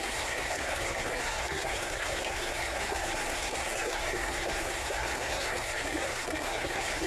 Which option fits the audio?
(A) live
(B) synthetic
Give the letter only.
B